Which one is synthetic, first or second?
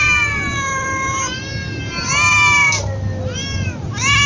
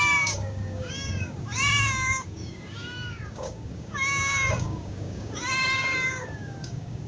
second